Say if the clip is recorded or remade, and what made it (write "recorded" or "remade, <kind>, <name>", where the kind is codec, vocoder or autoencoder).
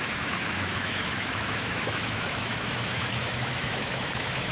remade, autoencoder, DAC-VAE